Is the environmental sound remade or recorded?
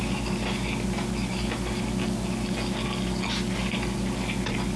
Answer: recorded